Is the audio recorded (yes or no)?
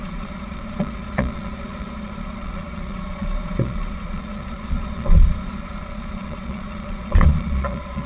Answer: no